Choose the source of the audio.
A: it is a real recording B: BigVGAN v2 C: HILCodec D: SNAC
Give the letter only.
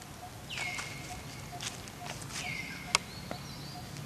A